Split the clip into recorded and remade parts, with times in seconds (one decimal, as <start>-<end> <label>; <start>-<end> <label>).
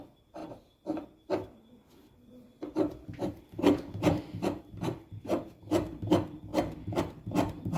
0.0-7.8 recorded